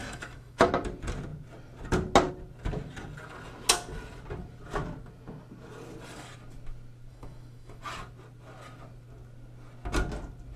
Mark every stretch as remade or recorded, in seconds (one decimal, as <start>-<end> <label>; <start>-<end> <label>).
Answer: 0.0-0.7 remade; 0.7-7.1 recorded; 7.1-7.8 remade; 7.8-10.6 recorded